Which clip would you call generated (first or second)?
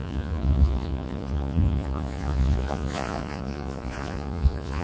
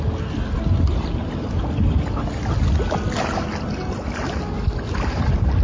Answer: first